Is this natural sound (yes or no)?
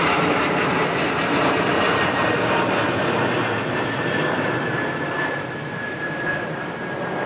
no